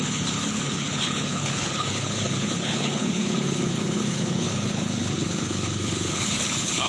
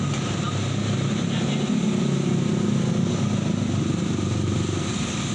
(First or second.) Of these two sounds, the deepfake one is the first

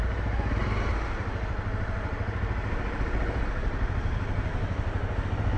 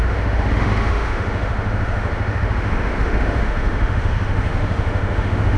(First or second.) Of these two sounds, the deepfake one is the second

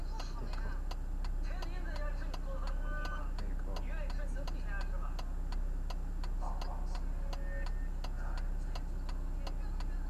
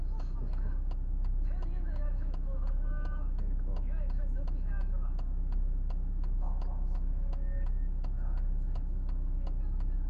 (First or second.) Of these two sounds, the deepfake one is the second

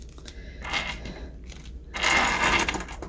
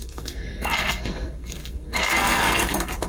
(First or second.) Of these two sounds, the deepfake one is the second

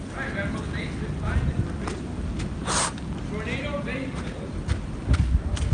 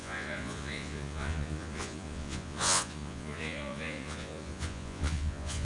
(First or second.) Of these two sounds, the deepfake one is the second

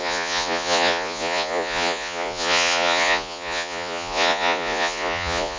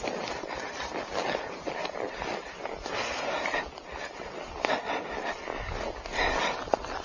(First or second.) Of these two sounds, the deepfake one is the first